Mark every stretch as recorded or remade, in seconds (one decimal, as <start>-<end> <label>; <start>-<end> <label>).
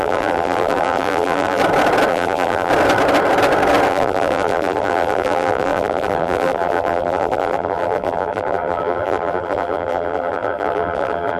0.0-1.6 remade; 1.6-2.1 recorded; 2.1-2.7 remade; 2.7-3.9 recorded; 3.9-11.4 remade